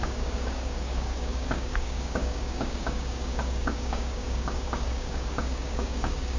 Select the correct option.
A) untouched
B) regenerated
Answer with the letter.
B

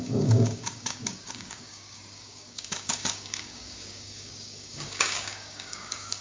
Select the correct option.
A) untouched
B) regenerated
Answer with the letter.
B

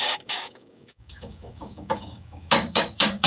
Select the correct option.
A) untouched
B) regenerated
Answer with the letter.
B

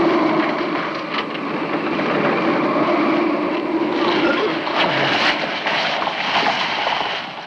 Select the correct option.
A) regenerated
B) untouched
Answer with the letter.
B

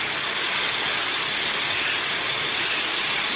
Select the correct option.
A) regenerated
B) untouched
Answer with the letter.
B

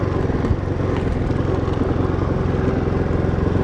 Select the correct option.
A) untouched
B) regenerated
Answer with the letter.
A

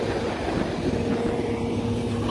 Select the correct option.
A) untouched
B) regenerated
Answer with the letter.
A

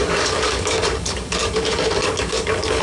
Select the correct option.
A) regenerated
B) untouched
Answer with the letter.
A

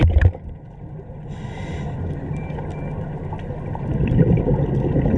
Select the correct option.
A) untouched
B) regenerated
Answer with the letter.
A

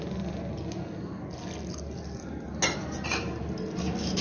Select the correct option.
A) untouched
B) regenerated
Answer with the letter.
A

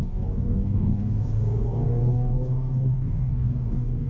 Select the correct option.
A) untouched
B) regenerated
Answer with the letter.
B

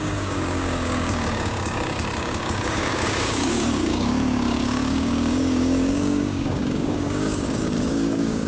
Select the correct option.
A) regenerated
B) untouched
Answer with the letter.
A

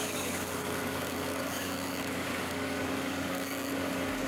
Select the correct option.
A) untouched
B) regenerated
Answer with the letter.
B